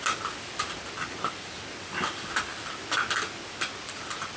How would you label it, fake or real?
real